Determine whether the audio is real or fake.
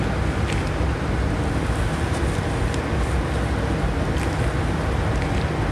real